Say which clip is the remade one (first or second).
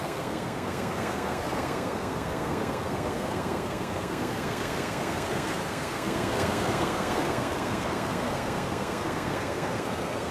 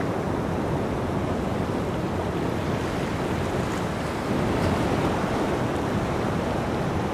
first